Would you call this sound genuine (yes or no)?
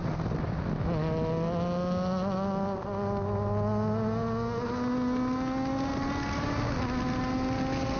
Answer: yes